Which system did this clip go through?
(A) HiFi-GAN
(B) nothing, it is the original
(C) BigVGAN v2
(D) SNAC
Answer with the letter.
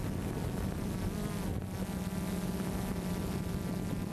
B